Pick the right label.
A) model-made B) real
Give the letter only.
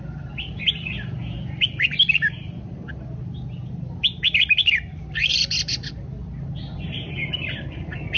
B